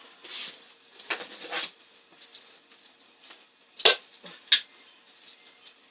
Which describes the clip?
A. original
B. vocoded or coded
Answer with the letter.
A